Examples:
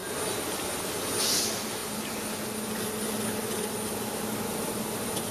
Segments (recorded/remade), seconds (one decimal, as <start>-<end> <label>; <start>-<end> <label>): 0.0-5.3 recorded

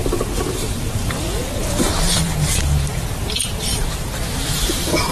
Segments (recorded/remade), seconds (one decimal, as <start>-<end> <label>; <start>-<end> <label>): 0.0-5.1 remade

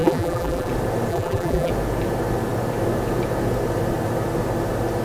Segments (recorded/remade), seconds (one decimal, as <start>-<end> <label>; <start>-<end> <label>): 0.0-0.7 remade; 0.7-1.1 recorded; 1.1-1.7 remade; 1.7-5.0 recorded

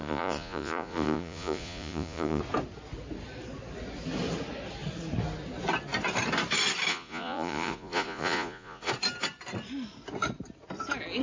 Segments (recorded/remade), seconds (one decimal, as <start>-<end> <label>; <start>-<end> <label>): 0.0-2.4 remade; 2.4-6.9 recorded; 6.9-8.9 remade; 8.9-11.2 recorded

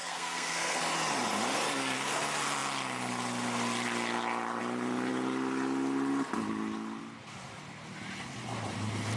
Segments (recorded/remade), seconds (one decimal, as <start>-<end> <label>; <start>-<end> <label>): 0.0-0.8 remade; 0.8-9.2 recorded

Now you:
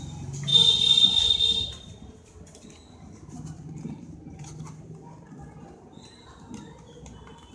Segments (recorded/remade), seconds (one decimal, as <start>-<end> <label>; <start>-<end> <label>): 0.0-0.5 recorded; 0.5-1.4 remade; 1.4-7.5 recorded